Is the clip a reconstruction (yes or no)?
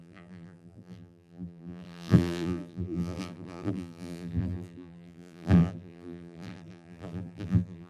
yes